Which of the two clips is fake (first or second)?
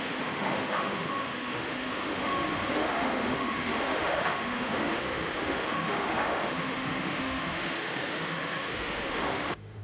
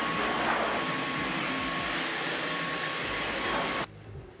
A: first